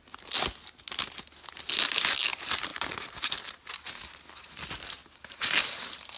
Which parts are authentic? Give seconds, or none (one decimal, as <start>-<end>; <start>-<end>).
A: 0.0-2.7; 3.3-5.0; 5.6-6.2